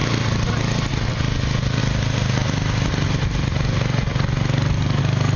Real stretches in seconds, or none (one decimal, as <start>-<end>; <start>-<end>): 0.0-5.4